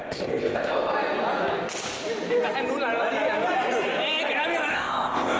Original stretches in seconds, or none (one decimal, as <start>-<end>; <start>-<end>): 0.9-4.7